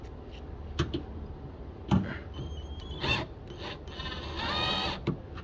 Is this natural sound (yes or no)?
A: yes